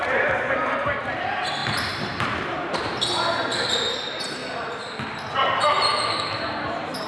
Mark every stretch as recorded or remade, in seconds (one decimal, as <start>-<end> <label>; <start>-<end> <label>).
0.0-1.0 recorded; 1.0-4.4 remade; 4.4-5.3 recorded; 5.3-7.1 remade